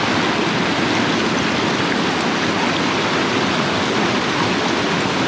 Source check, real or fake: real